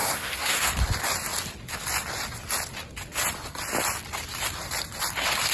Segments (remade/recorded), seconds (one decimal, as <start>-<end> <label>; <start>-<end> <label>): 0.0-0.7 remade; 0.7-5.5 recorded